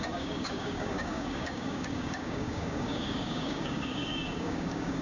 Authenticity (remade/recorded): remade